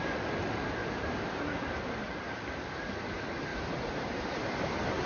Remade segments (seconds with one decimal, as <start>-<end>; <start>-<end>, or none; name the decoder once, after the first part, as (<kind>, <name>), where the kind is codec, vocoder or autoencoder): 0.8-2.1 (vocoder, BigVGAN v2); 3.5-5.1